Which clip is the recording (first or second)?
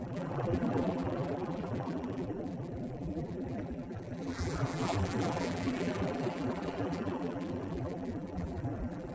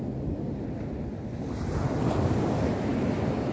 second